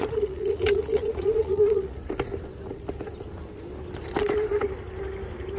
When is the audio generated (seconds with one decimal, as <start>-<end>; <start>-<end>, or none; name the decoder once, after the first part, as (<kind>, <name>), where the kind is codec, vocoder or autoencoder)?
0.0-2.0 (vocoder, Vocos)